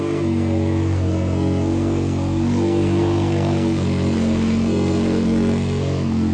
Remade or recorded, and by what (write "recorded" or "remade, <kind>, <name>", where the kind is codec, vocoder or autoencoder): remade, codec, SNAC